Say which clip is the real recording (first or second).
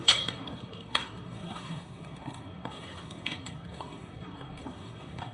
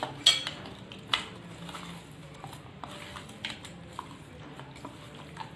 second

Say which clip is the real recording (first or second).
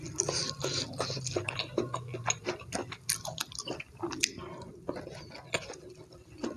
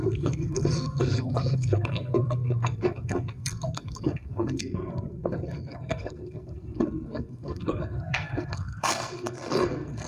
first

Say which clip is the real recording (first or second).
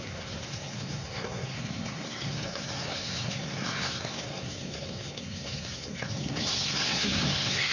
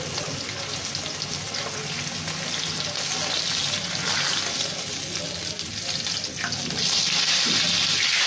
second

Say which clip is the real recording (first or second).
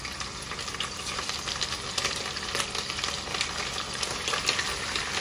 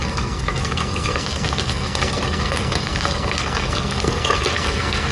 first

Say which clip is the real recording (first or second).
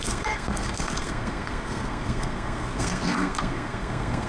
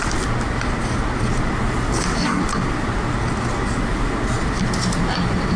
second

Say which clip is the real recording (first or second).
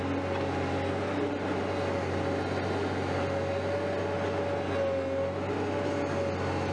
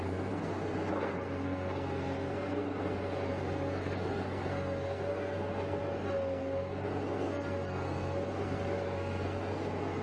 first